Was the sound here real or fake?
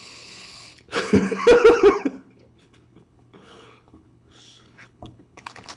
fake